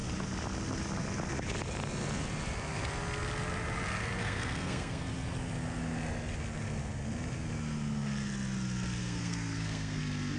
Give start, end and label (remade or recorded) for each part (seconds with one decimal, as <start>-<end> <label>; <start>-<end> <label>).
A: 0.0-4.2 recorded; 4.2-5.0 remade; 5.0-9.0 recorded; 9.0-10.0 remade; 10.0-10.4 recorded